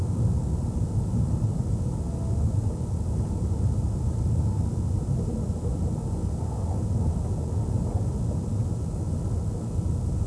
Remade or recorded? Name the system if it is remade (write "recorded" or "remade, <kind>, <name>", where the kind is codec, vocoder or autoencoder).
recorded